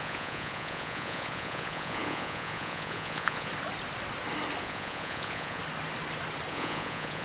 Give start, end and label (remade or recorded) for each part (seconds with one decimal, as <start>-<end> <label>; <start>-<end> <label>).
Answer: 0.0-3.5 remade; 3.5-4.6 recorded; 4.6-5.6 remade; 5.6-6.5 recorded; 6.5-7.2 remade